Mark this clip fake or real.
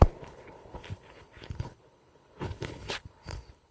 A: fake